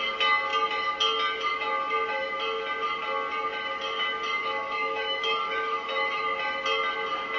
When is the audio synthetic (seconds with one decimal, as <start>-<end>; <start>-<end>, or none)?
4.4-6.2